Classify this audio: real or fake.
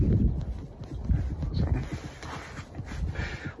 real